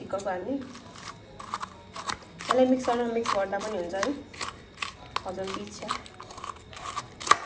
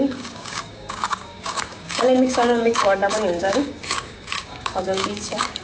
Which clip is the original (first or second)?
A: first